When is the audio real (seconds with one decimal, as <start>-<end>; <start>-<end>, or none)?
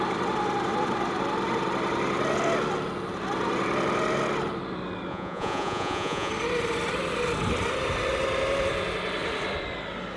0.0-5.1; 6.3-10.2